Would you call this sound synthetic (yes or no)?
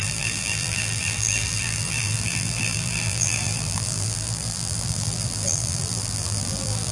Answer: yes